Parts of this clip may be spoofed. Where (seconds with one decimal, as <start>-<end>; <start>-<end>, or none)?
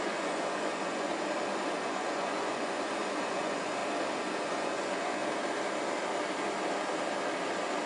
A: 0.0-1.1; 1.8-3.8; 4.4-5.2